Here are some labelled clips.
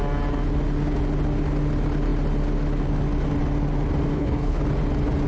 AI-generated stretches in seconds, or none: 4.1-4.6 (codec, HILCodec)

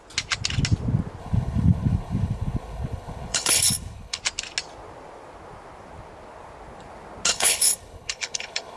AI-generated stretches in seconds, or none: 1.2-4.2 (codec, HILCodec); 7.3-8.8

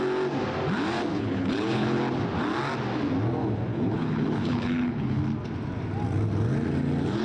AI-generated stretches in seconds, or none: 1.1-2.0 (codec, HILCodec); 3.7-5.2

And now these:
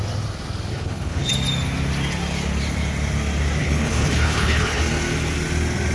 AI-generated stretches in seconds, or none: 0.7-1.3 (codec, HILCodec); 3.6-4.8

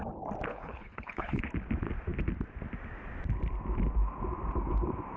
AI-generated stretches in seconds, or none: 0.5-1.4 (codec, HILCodec)

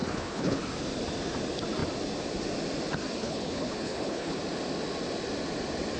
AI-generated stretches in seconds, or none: 0.0-0.6 (codec, HILCodec); 3.2-4.4

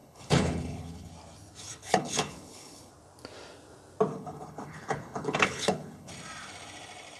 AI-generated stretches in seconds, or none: 0.0-1.1 (codec, HILCodec); 1.8-2.9; 4.1-6.1